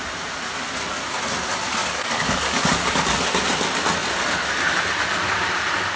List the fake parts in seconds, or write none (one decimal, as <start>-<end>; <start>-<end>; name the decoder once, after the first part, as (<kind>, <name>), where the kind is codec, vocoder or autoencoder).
1.8-3.2 (codec, DAC)